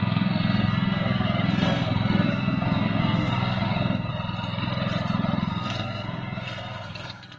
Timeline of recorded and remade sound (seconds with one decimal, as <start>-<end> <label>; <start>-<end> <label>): 0.0-4.1 remade; 4.1-5.5 recorded; 5.5-7.4 remade